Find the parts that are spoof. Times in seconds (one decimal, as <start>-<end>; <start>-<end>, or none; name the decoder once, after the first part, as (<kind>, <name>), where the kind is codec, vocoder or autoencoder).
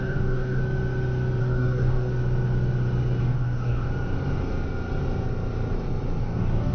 0.0-0.6 (codec, DAC); 1.4-2.1; 3.2-3.9; 6.2-6.7